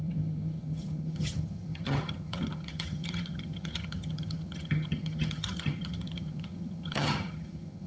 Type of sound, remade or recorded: remade